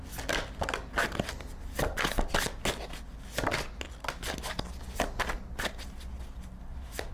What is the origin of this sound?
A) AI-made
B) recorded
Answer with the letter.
B